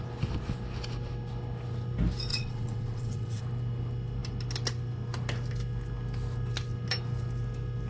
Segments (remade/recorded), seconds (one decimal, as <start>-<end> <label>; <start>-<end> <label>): 0.0-2.3 recorded; 2.3-3.4 remade; 3.4-7.9 recorded